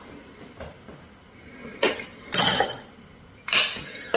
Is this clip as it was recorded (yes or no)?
yes